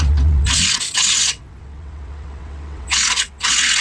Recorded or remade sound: remade